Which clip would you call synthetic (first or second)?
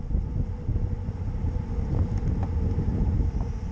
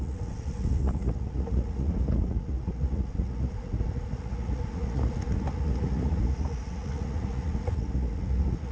second